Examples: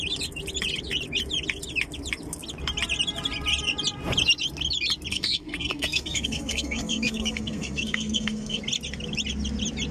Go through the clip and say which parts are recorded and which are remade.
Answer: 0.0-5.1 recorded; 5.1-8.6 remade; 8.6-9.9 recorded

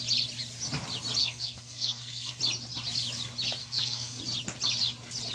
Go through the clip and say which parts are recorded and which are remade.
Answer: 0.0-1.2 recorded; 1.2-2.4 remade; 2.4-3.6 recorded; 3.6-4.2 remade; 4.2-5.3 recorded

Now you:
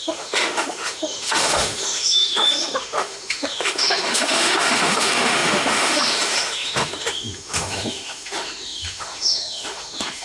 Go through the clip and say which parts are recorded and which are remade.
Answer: 0.0-10.2 remade

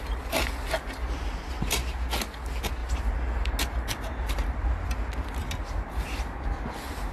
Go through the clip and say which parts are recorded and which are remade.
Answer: 0.0-7.1 recorded